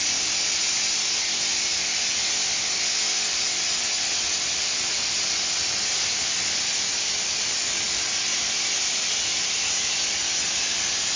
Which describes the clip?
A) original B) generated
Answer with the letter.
A